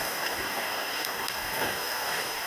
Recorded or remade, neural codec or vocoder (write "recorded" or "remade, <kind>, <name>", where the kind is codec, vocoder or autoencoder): remade, codec, DAC